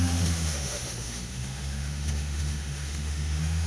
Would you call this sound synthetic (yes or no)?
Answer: yes